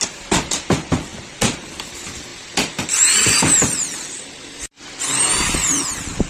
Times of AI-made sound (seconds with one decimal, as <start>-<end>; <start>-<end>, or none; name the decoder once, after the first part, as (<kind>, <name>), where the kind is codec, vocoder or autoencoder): none